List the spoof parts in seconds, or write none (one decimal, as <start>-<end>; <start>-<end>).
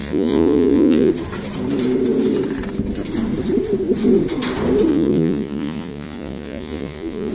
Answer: 0.0-1.1; 4.9-7.3